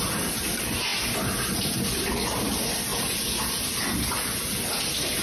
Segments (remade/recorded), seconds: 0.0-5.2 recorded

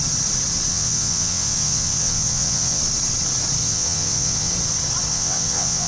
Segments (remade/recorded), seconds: 0.0-0.7 recorded; 0.7-2.8 remade; 2.8-3.6 recorded; 3.6-4.5 remade; 4.5-5.1 recorded; 5.1-5.9 remade

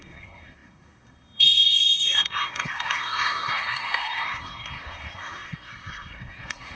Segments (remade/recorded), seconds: 0.0-6.8 remade

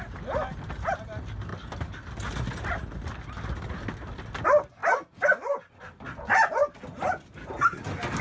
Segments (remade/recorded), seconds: 0.0-8.2 recorded

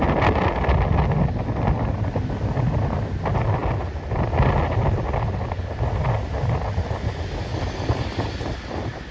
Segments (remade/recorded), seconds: 0.0-9.1 recorded